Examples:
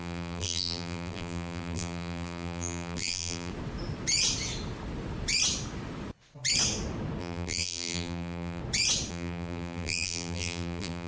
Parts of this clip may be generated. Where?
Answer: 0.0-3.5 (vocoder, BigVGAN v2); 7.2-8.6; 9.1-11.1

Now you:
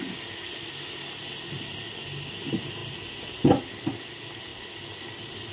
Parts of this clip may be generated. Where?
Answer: none